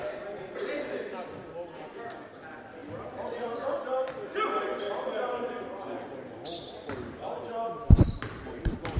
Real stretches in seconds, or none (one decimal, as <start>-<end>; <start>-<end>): 0.0-2.8; 3.8-4.7; 8.2-9.0